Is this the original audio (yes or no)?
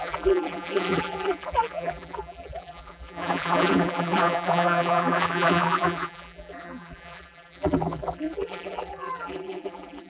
no